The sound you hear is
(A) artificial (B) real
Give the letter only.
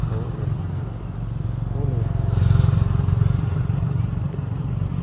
B